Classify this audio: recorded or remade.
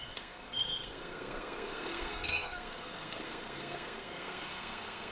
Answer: remade